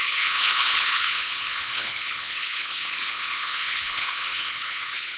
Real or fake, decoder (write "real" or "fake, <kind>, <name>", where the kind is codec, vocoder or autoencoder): fake, codec, HILCodec